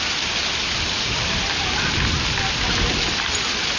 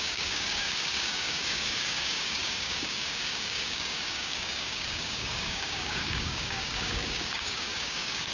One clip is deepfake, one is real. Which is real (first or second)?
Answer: first